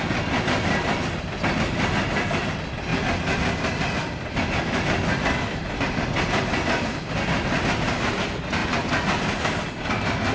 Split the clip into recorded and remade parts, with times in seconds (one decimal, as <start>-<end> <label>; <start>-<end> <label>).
0.0-10.3 recorded